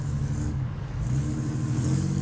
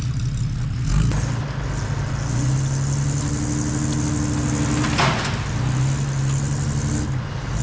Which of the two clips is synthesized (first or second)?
first